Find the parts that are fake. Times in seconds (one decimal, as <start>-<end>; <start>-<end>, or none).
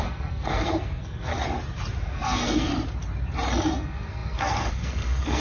0.0-1.3; 2.0-2.7; 3.7-5.4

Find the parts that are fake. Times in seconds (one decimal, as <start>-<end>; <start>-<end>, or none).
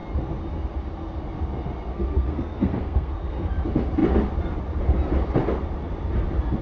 1.9-3.5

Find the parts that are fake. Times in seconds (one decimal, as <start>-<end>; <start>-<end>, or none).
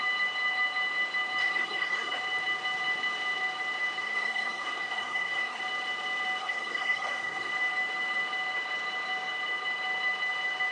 1.4-2.2; 4.0-5.6; 6.4-7.5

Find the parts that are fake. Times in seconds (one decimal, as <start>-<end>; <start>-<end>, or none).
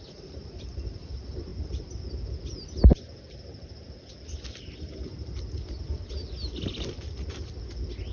none